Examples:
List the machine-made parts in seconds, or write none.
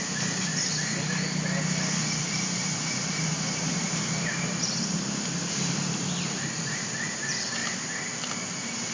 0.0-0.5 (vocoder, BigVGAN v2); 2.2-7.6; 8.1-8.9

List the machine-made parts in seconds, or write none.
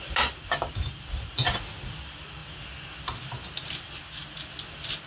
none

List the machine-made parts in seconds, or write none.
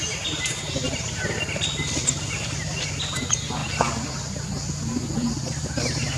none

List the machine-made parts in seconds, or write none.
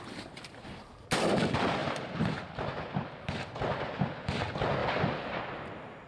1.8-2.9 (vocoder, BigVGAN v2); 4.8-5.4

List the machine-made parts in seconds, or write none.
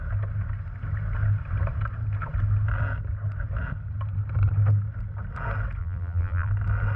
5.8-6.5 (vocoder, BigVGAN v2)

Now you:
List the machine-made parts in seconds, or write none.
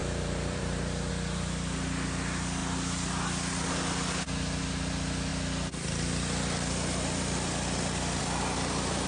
0.0-1.1 (vocoder, BigVGAN v2)